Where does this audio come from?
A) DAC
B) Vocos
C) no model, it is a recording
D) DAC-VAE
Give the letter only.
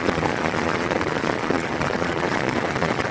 B